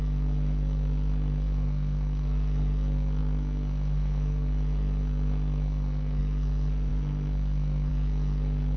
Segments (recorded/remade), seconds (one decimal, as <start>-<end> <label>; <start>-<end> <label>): 0.0-8.8 remade